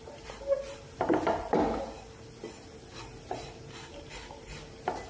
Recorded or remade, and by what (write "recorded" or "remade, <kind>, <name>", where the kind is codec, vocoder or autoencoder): recorded